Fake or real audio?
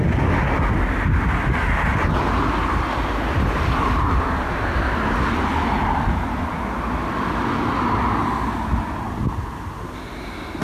real